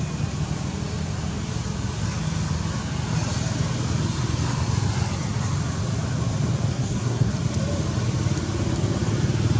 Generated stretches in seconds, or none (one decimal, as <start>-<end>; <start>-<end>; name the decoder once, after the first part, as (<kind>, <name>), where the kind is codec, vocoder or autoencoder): 6.7-7.3 (codec, SNAC)